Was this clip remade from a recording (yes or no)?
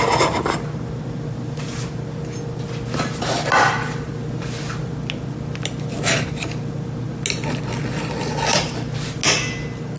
no